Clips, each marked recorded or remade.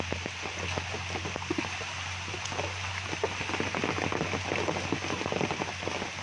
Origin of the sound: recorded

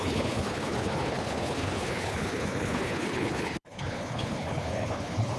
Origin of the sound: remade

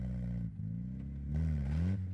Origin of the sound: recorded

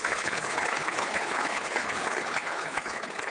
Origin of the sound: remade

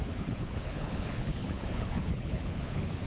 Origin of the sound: remade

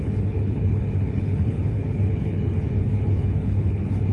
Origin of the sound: remade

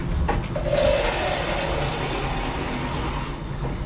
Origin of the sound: recorded